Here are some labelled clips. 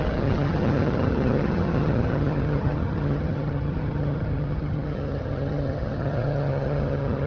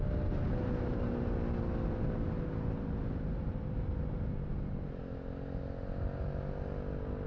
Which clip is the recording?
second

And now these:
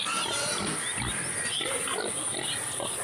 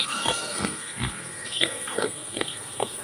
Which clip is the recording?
first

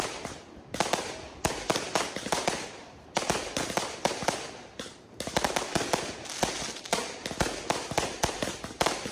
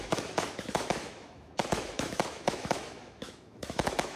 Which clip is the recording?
first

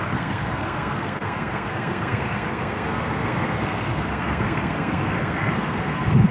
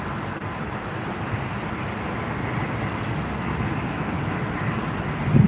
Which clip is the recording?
second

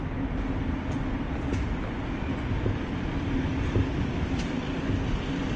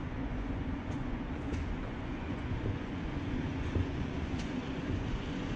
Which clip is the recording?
first